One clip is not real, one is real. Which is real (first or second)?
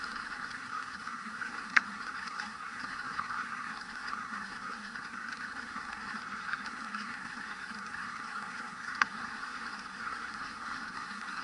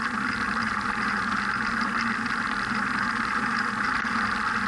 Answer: second